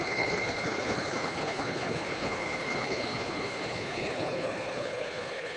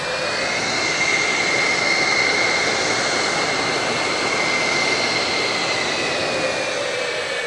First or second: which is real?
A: second